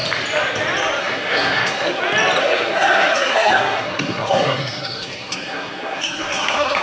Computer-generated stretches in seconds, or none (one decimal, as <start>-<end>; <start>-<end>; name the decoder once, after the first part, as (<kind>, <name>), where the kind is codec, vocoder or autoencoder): 1.0-2.0 (codec, SNAC); 2.4-6.8